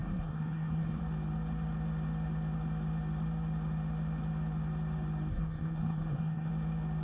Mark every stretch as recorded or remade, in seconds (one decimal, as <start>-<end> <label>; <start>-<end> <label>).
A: 0.0-1.0 remade; 1.0-5.3 recorded; 5.3-6.5 remade; 6.5-7.0 recorded